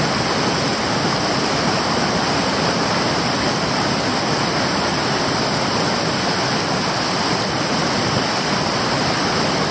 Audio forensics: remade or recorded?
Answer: recorded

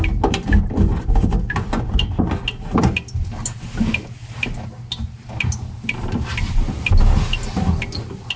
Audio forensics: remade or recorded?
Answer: recorded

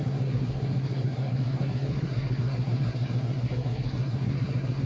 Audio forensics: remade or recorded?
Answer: remade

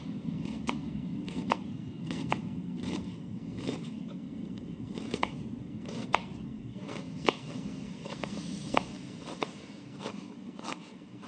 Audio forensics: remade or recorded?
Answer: remade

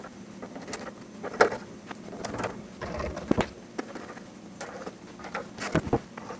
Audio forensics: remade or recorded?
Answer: recorded